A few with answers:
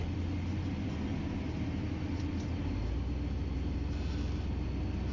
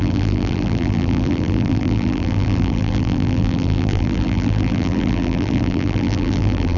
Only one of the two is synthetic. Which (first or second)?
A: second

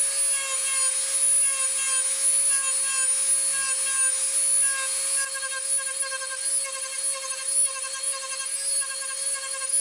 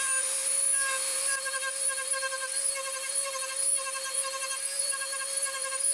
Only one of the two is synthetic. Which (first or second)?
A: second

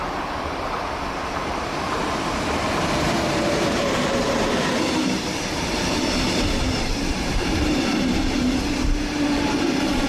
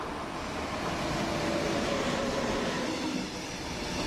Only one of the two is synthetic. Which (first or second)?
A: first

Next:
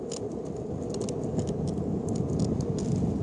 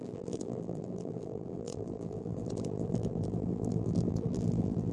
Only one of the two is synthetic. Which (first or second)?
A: second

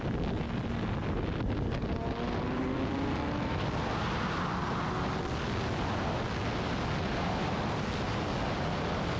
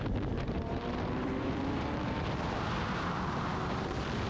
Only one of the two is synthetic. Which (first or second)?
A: second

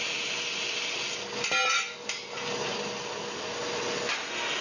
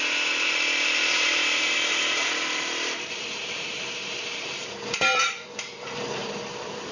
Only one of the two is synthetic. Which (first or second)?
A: second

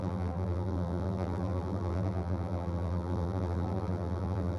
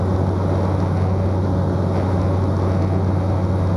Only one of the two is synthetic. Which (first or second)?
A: first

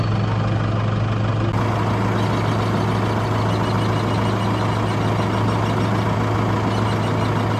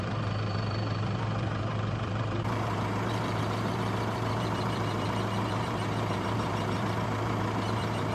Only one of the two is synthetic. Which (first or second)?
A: second